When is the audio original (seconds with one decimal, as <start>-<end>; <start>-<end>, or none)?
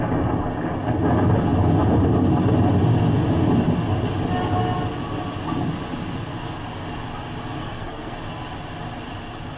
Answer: 0.0-7.6; 8.2-9.6